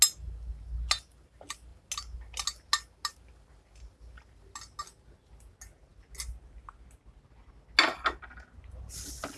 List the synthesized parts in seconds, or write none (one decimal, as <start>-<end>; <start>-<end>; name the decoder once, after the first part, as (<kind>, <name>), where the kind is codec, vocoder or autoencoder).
none